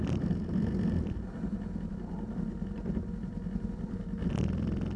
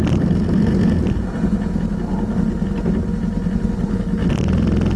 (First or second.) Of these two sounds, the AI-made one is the first